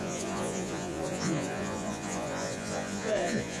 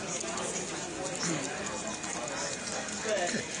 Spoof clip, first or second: first